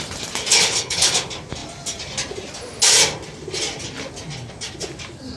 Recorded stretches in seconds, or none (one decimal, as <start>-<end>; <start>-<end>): 0.0-0.5; 1.1-5.4